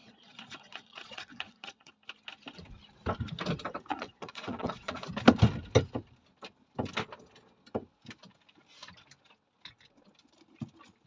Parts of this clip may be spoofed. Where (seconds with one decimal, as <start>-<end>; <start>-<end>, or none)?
0.0-1.9; 3.9-5.1